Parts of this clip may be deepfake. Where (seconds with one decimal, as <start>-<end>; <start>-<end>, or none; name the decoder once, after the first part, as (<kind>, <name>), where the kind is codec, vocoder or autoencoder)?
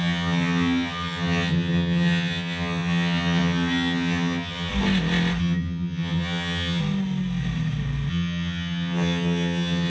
0.0-4.7 (vocoder, HiFi-GAN); 5.4-6.8; 8.1-9.9